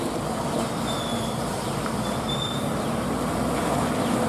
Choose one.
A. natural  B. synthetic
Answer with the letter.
A